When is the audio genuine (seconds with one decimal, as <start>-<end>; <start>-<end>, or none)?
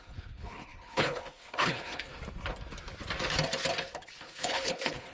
2.1-3.8